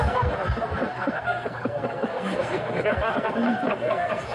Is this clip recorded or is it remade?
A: remade